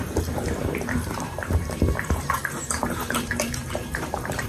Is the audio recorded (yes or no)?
no